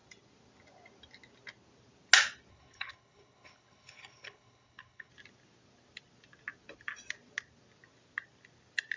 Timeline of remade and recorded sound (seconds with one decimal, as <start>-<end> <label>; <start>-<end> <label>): 0.0-2.5 recorded; 2.5-5.1 remade; 5.1-9.0 recorded